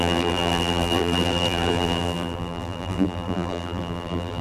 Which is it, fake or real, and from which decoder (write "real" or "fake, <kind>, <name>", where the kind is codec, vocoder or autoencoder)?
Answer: fake, vocoder, BigVGAN v2